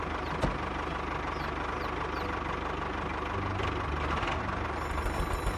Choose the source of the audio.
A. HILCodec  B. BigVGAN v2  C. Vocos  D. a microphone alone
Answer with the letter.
D